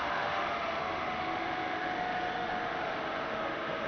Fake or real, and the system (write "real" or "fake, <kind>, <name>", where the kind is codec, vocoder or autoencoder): fake, autoencoder, DAC-VAE